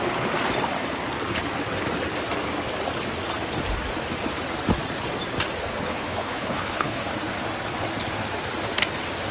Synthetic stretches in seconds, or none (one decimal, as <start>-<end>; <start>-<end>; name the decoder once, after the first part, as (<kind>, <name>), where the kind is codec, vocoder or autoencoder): 5.9-7.0 (codec, HILCodec)